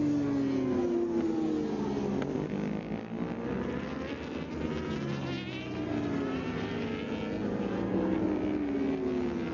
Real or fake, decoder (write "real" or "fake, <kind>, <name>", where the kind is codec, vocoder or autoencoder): real